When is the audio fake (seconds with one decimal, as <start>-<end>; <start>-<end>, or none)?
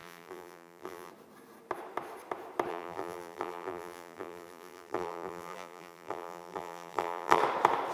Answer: 0.0-1.1; 2.7-7.4